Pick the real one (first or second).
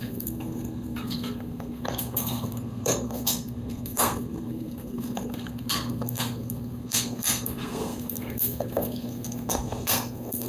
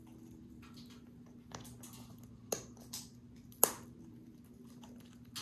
second